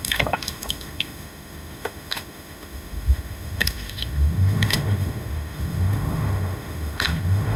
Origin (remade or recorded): remade